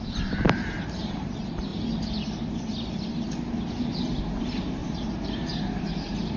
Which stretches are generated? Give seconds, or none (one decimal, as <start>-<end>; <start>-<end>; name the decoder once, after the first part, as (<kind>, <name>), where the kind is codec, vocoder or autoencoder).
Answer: 0.0-1.7 (vocoder, BigVGAN v2); 3.8-4.8; 5.6-6.4